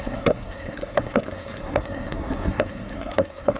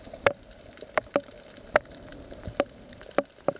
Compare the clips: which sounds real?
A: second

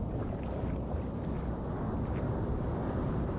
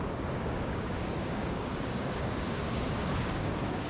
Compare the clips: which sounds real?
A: first